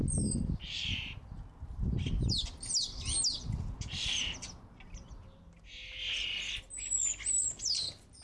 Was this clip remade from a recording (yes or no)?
no